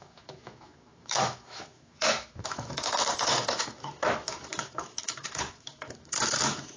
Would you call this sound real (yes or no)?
no